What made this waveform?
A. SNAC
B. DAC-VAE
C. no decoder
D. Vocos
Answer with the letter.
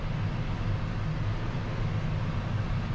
C